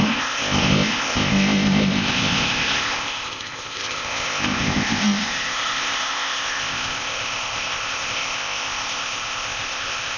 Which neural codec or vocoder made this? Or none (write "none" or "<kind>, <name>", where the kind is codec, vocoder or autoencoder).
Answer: codec, ZipCodec